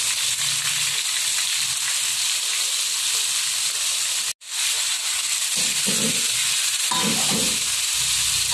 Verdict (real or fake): real